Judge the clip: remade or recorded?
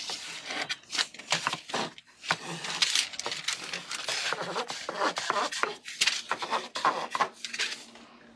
recorded